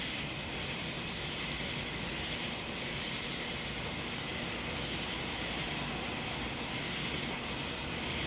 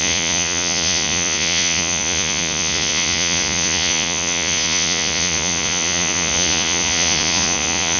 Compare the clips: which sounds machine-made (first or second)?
second